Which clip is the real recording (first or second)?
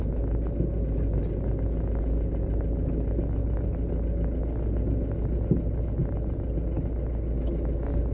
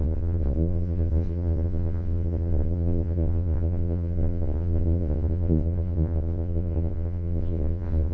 first